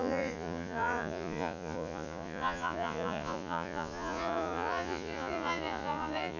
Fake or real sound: fake